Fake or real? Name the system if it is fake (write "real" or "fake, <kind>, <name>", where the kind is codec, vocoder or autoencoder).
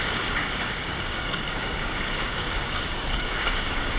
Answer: fake, codec, DAC